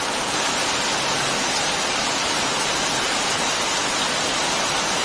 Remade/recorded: recorded